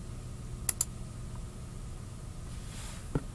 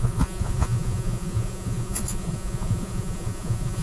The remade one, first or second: second